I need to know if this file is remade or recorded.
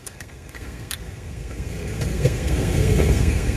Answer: remade